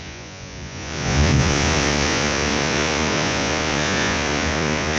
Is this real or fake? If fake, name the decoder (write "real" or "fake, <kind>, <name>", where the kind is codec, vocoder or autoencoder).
fake, vocoder, Vocos